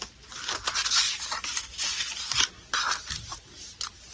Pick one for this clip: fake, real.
real